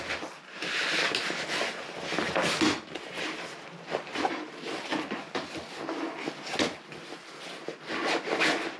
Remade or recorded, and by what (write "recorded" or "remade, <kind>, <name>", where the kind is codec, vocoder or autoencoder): recorded